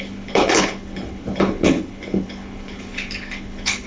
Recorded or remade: remade